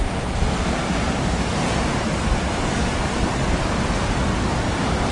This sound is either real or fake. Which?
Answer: real